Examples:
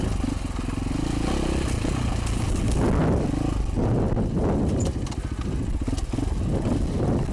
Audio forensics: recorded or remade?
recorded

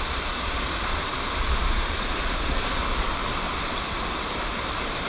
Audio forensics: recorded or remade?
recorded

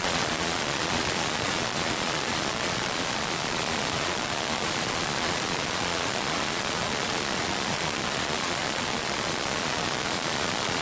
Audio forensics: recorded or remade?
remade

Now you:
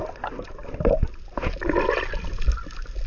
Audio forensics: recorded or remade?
recorded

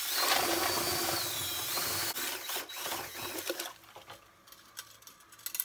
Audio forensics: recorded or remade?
recorded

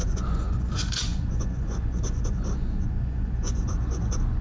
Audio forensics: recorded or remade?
remade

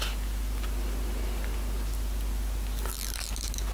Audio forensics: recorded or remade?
recorded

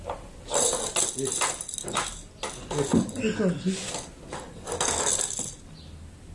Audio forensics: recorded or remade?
recorded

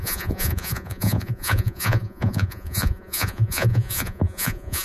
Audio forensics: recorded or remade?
remade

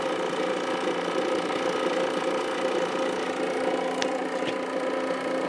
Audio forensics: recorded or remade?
recorded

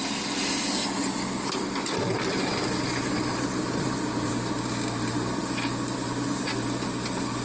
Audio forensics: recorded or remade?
recorded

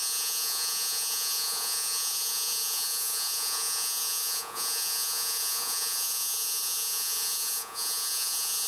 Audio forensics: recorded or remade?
remade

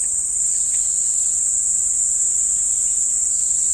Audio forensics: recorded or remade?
recorded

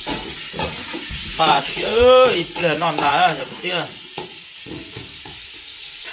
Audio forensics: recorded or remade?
remade